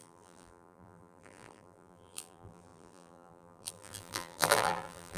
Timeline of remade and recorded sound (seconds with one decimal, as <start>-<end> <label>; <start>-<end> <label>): 0.0-5.2 remade